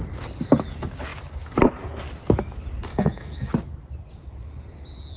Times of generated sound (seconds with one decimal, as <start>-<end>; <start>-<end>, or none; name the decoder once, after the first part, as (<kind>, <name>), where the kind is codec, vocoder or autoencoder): 2.9-3.5 (autoencoder, DAC-VAE)